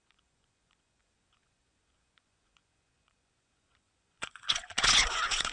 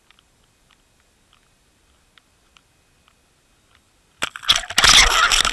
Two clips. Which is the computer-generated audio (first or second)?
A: first